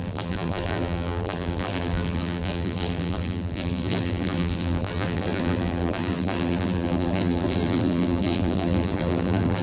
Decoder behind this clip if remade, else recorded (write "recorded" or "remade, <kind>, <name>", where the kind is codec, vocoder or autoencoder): remade, vocoder, BigVGAN v2